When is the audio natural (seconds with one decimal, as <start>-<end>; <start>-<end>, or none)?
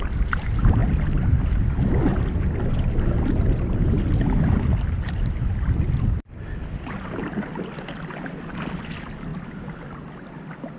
0.0-10.8